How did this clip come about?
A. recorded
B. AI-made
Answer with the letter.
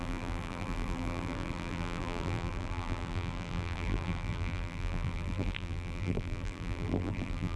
B